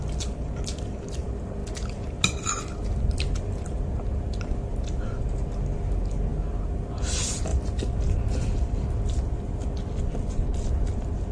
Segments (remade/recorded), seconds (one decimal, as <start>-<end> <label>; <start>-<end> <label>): 0.0-11.3 recorded